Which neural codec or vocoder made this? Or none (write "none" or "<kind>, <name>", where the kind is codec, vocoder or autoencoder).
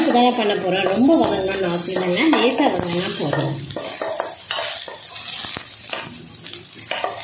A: none